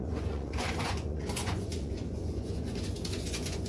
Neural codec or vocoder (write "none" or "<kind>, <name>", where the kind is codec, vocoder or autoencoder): vocoder, Vocos